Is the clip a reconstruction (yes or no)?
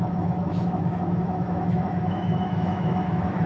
yes